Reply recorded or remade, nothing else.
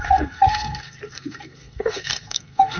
remade